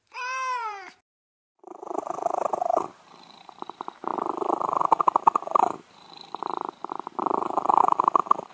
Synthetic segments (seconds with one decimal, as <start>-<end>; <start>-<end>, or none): 0.0-4.1; 4.8-6.8; 7.8-8.5